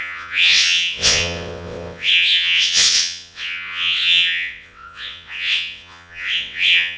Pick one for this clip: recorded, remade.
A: remade